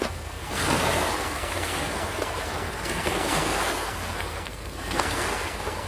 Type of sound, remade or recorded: remade